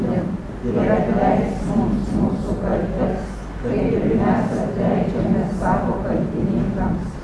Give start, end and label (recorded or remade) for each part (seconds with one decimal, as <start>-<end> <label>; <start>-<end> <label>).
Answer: 0.0-2.7 remade; 2.7-3.7 recorded; 3.7-7.2 remade